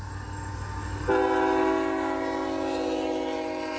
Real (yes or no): yes